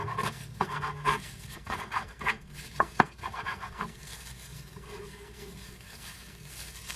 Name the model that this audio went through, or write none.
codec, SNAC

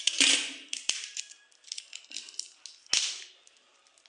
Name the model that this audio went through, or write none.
none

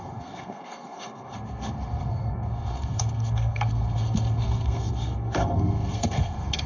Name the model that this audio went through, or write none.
codec, SNAC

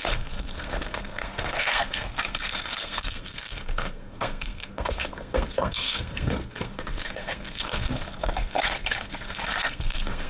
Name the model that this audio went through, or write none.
codec, SNAC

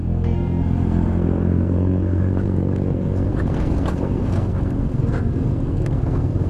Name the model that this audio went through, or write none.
codec, SNAC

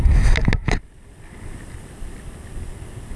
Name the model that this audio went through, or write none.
none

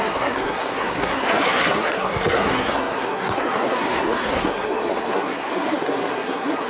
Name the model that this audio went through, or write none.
codec, SNAC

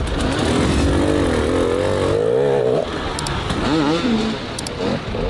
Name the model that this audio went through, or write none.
none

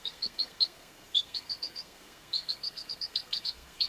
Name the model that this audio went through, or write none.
codec, SNAC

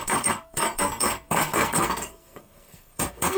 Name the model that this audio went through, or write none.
codec, SNAC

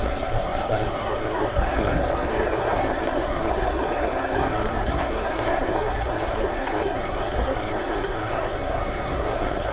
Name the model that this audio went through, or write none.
codec, SNAC